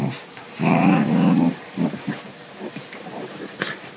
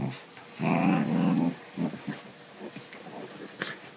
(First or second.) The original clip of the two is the second